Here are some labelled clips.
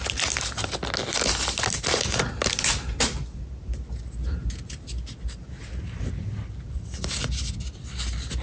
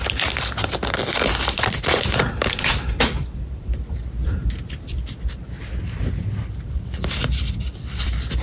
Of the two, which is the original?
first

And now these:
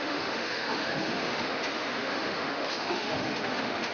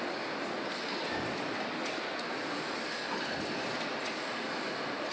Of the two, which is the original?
second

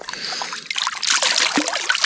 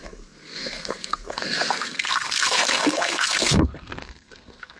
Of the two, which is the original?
first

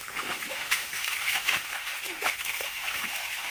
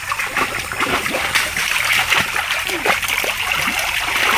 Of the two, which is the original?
second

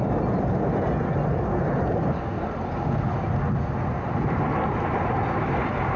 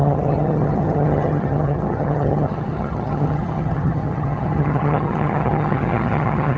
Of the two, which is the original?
first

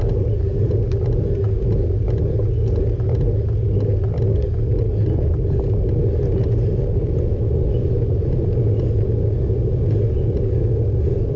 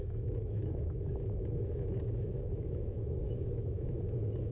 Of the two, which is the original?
first